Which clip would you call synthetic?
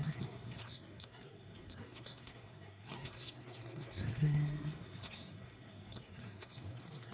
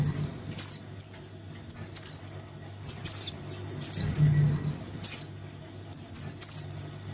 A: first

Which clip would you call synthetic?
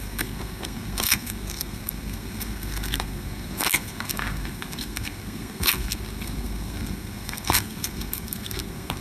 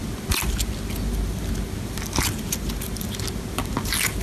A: first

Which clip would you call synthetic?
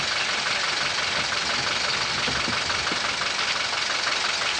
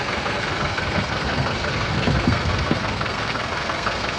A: second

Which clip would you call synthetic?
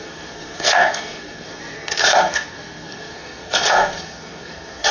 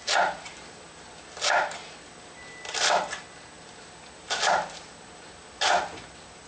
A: first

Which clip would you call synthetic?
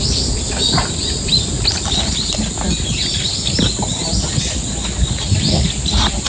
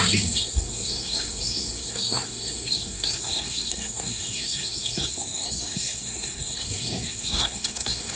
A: second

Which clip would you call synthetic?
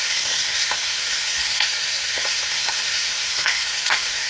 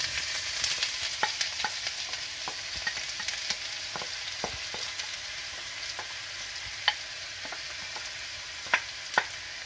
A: first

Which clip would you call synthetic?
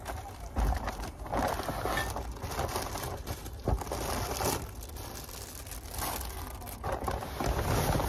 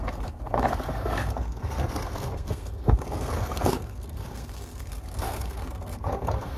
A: second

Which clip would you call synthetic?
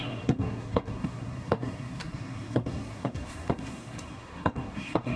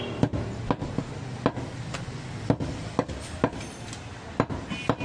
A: first